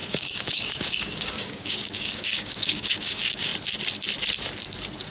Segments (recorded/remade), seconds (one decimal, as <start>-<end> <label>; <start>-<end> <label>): 0.0-3.5 remade; 3.5-5.1 recorded